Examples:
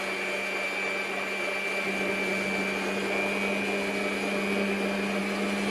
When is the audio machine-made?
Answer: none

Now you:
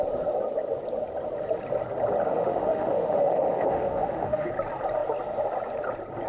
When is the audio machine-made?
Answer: 2.2-4.5 (autoencoder, DAC-VAE)

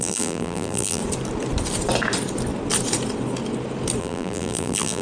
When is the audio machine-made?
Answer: 0.0-1.0 (vocoder, BigVGAN v2); 4.0-5.0

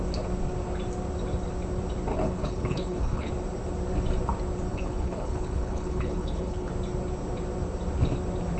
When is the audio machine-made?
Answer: 2.1-3.3 (codec, HILCodec); 4.7-6.7

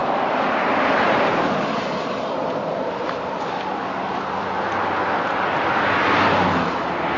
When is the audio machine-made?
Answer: 0.0-3.3 (vocoder, BigVGAN v2)

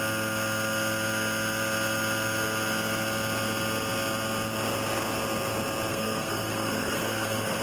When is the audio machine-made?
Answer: 5.9-7.6 (codec, SNAC)

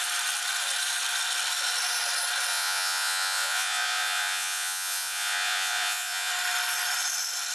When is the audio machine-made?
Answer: 2.5-6.3 (vocoder, Vocos)